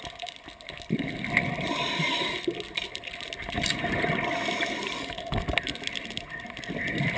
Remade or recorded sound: recorded